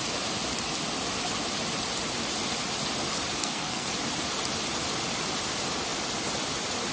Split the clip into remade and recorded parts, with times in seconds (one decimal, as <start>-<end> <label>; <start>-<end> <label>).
0.0-3.4 recorded; 3.4-3.9 remade; 3.9-6.9 recorded